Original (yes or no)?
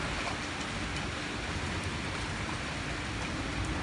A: yes